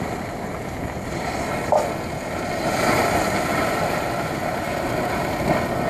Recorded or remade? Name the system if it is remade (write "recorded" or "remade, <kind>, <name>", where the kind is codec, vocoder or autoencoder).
recorded